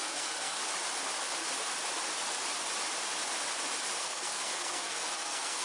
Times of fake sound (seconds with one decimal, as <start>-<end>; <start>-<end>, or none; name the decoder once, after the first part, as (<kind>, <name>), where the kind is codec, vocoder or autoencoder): 0.0-0.6 (codec, SNAC); 4.0-5.6